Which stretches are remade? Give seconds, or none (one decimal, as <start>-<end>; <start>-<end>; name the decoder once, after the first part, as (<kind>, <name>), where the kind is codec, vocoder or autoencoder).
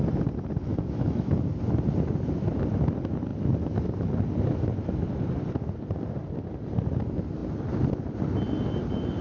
0.7-1.3 (autoencoder, DAC-VAE)